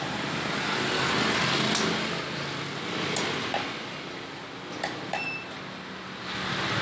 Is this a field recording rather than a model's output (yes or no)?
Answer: yes